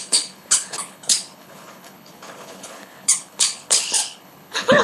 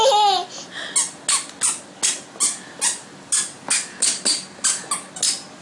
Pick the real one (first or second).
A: second